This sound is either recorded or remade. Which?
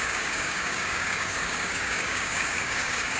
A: remade